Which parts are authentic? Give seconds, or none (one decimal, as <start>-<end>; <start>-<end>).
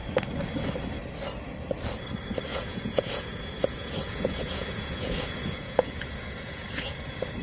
0.0-2.5; 6.9-7.4